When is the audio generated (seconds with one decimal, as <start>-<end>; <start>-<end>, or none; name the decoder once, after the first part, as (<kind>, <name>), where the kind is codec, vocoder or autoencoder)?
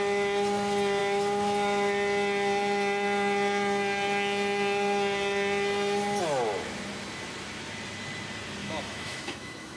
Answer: 8.6-9.8 (autoencoder, DAC-VAE)